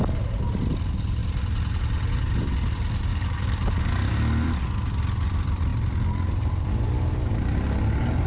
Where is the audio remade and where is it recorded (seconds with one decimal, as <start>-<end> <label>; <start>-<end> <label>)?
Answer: 0.0-3.1 recorded; 3.1-4.1 remade; 4.1-8.3 recorded